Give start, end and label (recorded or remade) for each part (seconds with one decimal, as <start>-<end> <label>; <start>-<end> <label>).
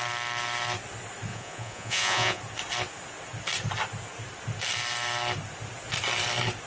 0.0-1.3 recorded; 1.3-2.4 remade; 2.4-6.7 recorded